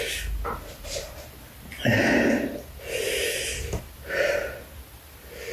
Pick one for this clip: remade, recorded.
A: recorded